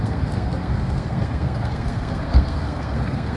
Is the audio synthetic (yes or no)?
yes